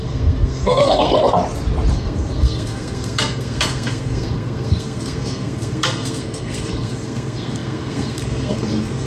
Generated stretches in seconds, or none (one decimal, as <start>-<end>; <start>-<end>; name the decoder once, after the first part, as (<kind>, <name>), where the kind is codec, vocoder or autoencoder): 0.0-1.1 (codec, SNAC); 1.9-9.1